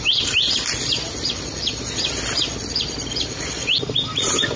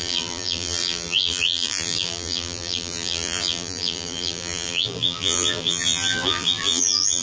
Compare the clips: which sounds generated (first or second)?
second